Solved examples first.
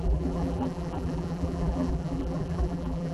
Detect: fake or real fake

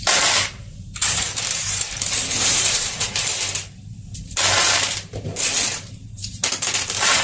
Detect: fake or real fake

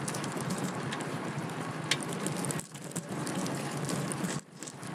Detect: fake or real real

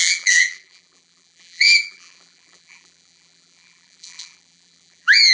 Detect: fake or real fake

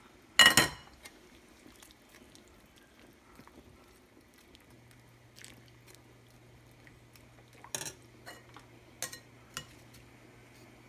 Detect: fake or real real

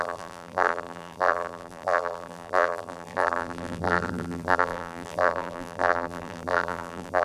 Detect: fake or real fake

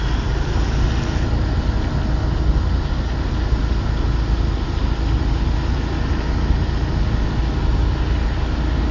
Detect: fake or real real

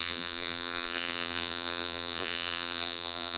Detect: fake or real fake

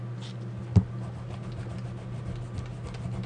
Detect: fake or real real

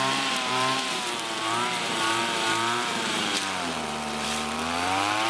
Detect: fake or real fake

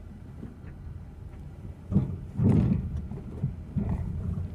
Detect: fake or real real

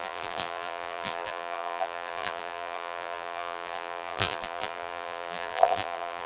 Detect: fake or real fake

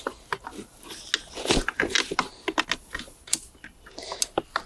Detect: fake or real real